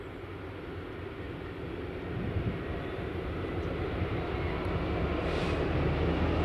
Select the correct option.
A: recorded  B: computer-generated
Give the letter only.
A